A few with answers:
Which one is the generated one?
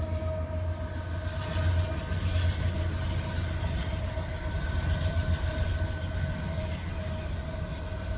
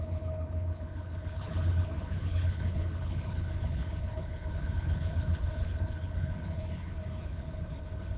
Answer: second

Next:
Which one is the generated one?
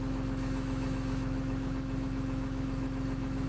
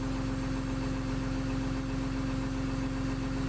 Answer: first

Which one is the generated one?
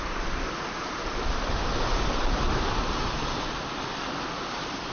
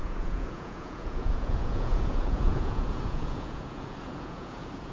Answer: second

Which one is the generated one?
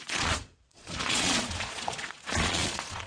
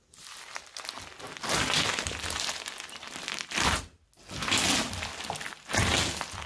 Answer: first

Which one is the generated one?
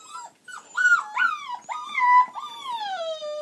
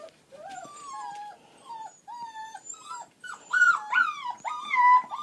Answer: second